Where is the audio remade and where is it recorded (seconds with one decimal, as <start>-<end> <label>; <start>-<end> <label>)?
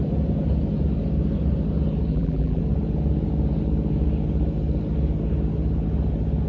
0.0-2.1 recorded; 2.1-2.6 remade; 2.6-6.5 recorded